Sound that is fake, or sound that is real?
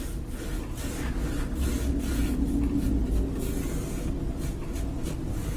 real